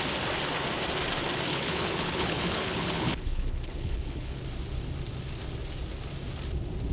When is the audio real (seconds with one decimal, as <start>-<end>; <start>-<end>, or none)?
0.0-1.5; 4.4-6.9